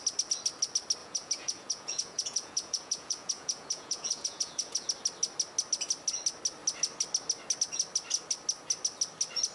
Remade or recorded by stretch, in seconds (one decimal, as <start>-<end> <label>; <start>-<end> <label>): 0.0-1.0 recorded; 1.0-4.9 remade; 4.9-9.5 recorded